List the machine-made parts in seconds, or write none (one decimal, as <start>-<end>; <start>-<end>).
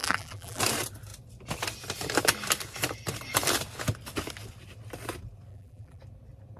0.0-0.6; 5.5-6.0